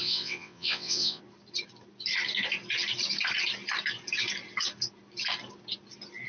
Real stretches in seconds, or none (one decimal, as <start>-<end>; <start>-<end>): 1.2-6.3